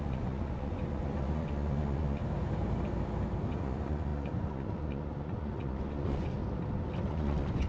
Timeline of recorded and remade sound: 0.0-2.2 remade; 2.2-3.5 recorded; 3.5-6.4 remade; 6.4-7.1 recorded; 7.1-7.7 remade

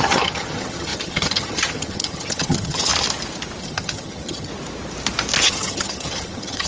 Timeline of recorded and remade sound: 0.0-2.9 remade; 2.9-3.6 recorded; 3.6-4.5 remade; 4.5-5.4 recorded; 5.4-6.7 remade

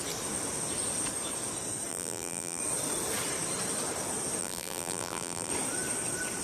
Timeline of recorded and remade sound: 0.0-1.9 recorded; 1.9-2.6 remade; 2.6-4.4 recorded; 4.4-5.5 remade; 5.5-6.4 recorded

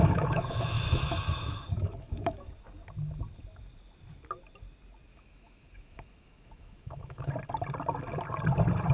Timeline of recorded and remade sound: 0.0-2.5 remade; 2.5-5.1 recorded; 5.1-7.3 remade; 7.3-8.9 recorded

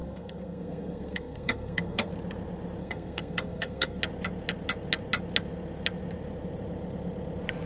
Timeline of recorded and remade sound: 0.0-2.1 remade; 2.1-2.8 recorded; 2.8-4.0 remade; 4.0-7.7 recorded